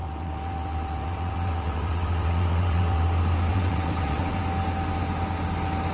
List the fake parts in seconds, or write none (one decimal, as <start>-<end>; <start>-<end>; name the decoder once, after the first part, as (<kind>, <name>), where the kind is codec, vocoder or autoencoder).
0.0-3.0 (vocoder, WaveNeXt); 3.5-4.4